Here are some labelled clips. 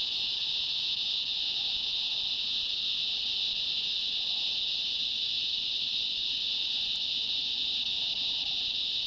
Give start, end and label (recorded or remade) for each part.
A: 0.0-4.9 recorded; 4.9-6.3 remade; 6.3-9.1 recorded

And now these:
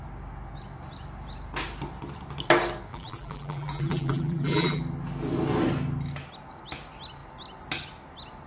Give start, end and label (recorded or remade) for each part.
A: 0.0-2.9 recorded; 2.9-4.8 remade; 4.8-8.5 recorded

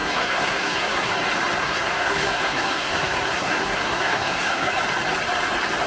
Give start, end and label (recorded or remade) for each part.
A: 0.0-1.1 remade; 1.1-1.6 recorded; 1.6-4.7 remade; 4.7-5.9 recorded

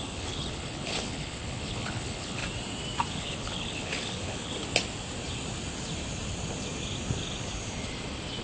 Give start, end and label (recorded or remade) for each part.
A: 0.0-2.4 remade; 2.4-3.2 recorded; 3.2-4.5 remade; 4.5-8.4 recorded